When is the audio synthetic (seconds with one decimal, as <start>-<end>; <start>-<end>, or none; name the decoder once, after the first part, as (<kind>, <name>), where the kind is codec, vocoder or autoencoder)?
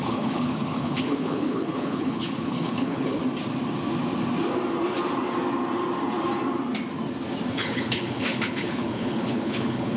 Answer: 0.0-3.2 (codec, HILCodec); 7.5-10.0